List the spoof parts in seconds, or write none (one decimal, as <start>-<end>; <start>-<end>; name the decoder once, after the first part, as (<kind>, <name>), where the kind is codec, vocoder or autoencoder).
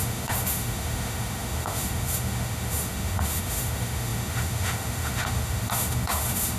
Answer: 0.0-6.6 (autoencoder, DAC-VAE)